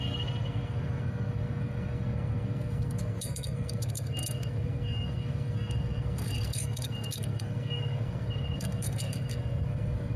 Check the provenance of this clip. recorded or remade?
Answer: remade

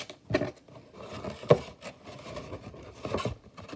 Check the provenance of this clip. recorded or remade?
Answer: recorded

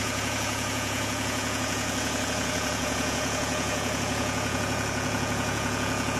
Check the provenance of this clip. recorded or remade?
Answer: remade